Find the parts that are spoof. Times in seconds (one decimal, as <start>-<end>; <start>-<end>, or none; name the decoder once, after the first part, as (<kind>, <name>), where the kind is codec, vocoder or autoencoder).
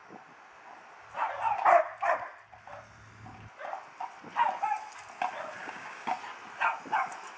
5.6-6.1 (codec, DAC)